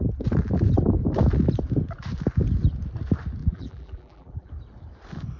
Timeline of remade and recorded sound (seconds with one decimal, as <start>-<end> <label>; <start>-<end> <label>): 0.0-3.4 recorded; 3.4-4.5 remade; 4.5-5.4 recorded